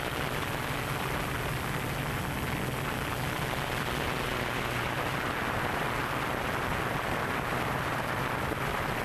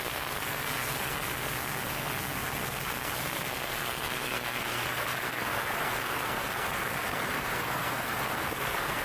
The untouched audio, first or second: first